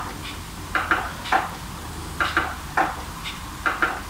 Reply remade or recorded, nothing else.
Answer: recorded